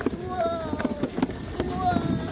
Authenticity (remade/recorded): recorded